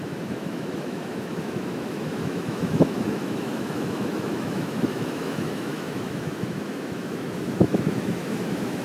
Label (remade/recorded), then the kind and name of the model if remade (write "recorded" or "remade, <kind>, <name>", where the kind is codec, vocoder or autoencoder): remade, autoencoder, DAC-VAE